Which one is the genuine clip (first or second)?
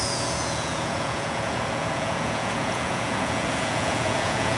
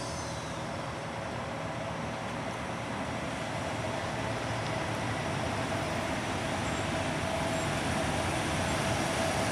second